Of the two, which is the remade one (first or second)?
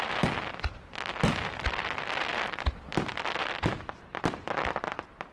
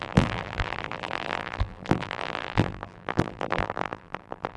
second